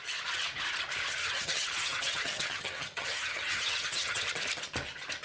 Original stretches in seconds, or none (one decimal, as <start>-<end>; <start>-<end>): 0.0-1.2; 4.2-5.2